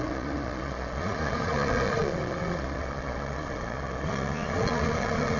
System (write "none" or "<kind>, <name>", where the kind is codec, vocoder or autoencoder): vocoder, Vocos